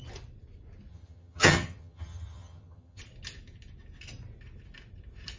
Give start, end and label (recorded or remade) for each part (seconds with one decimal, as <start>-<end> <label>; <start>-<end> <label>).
0.0-0.9 recorded; 0.9-3.0 remade; 3.0-5.4 recorded